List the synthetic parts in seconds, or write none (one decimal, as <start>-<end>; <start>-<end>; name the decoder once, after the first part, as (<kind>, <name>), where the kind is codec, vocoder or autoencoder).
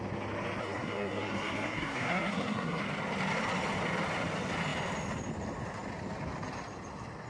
0.6-2.8 (codec, SNAC)